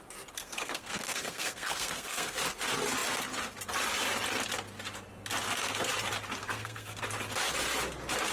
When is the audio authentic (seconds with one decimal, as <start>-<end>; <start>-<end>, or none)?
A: 0.0-0.4; 2.4-6.4; 7.0-8.3